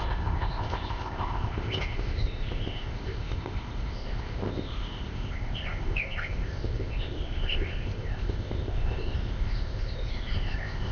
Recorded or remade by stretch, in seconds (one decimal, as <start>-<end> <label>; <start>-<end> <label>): 0.0-10.9 remade